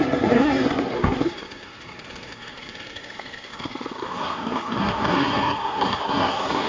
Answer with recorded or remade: remade